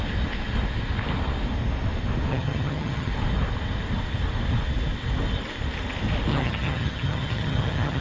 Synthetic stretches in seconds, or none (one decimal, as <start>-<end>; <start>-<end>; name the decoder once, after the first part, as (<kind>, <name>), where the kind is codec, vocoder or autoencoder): 2.3-3.1 (vocoder, HiFi-GAN); 6.3-8.0